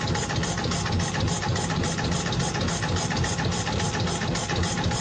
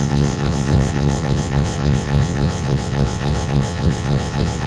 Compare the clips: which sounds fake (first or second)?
second